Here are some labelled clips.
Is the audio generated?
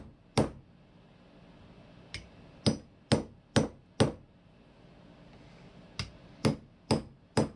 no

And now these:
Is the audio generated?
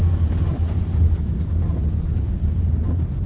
no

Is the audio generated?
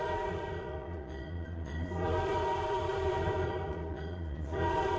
yes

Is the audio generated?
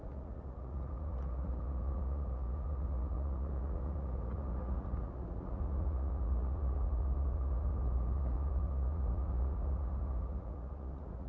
yes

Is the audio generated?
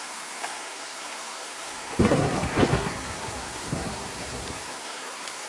yes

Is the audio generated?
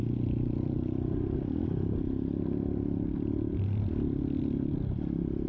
no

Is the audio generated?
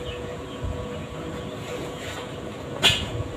yes